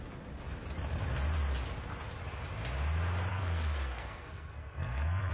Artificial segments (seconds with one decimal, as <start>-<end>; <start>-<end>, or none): 3.3-5.3